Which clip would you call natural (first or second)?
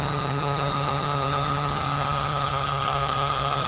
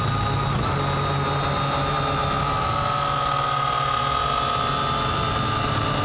second